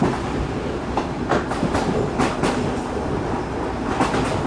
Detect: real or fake real